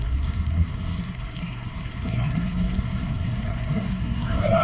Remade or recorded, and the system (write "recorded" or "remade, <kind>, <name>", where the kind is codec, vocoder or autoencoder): remade, codec, SNAC